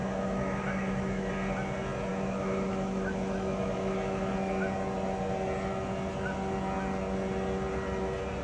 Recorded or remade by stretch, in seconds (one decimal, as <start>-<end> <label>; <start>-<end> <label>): 0.0-1.3 remade; 1.3-2.1 recorded; 2.1-4.3 remade; 4.3-8.4 recorded